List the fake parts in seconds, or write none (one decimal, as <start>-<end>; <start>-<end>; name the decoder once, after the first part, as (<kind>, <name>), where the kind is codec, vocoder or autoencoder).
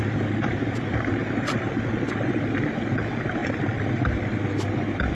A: 0.0-1.2 (vocoder, BigVGAN v2); 2.5-3.4